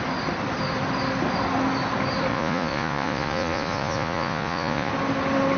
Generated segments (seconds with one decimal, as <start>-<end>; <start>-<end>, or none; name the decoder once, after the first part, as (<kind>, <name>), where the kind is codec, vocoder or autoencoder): 2.3-4.9 (vocoder, Vocos)